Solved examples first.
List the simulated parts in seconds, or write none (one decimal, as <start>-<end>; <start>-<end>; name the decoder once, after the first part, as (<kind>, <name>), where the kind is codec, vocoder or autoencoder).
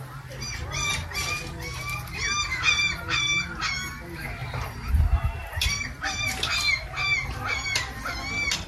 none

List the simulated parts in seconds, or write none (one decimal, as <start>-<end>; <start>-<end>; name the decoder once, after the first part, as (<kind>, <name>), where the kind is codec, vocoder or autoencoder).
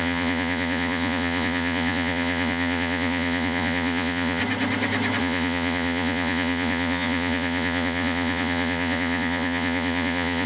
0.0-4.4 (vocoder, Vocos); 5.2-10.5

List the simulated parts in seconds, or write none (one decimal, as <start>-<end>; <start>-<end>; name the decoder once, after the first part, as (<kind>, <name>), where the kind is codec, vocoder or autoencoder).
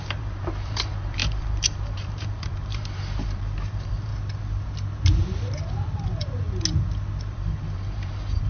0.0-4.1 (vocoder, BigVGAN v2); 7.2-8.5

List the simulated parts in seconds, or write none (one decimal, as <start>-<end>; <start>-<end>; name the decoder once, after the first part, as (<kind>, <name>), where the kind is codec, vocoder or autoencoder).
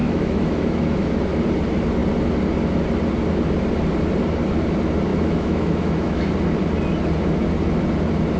0.0-1.2 (autoencoder, DAC-VAE); 5.1-6.3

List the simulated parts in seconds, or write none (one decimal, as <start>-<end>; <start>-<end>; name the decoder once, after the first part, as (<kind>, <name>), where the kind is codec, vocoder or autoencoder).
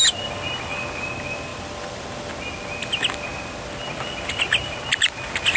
1.5-2.3 (vocoder, BigVGAN v2)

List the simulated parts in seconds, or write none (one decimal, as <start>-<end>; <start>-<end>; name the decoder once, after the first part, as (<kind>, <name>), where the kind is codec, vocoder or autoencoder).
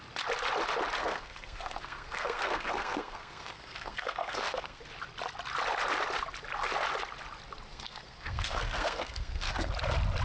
1.0-4.8 (codec, SNAC); 7.7-9.7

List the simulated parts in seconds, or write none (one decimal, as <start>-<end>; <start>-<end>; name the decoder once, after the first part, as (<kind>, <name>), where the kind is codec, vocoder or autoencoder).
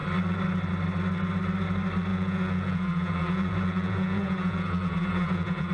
2.1-5.7 (vocoder, Vocos)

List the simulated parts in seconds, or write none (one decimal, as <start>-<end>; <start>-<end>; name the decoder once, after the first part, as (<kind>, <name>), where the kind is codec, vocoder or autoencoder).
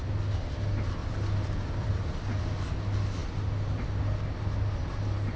1.0-2.4 (vocoder, BigVGAN v2)